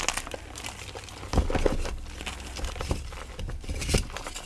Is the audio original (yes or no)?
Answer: yes